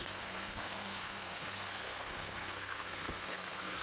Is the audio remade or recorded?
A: remade